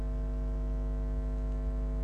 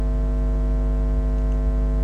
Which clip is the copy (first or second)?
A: first